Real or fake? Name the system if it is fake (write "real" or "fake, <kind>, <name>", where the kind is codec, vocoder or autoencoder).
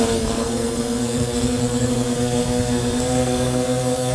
fake, codec, SNAC